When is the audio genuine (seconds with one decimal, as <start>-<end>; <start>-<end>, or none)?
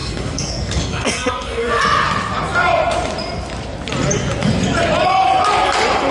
1.8-6.1